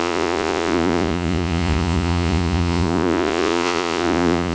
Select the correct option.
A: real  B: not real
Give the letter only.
B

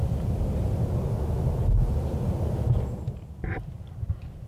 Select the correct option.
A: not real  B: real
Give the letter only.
B